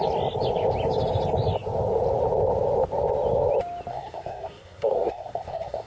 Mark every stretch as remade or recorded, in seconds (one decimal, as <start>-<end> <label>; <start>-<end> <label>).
0.0-3.9 recorded; 3.9-5.9 remade